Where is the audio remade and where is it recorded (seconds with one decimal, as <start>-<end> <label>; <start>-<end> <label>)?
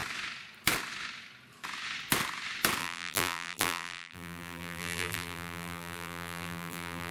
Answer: 0.0-2.8 recorded; 2.8-7.1 remade